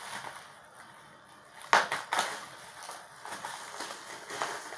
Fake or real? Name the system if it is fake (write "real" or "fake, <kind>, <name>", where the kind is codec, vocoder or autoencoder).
real